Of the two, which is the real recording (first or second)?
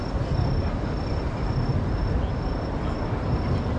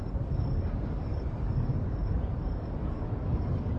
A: first